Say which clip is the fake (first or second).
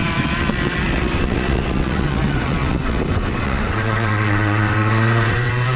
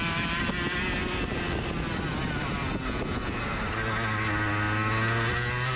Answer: first